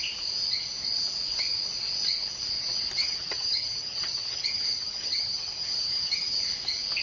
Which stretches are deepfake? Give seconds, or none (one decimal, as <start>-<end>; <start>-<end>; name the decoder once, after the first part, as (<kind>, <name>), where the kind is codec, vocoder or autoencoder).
3.0-6.4 (vocoder, HiFi-GAN)